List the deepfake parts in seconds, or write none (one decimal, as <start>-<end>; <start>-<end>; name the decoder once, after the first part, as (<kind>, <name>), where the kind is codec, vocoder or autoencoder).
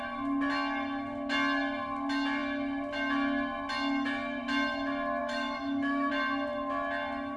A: 5.2-6.1 (autoencoder, DAC-VAE)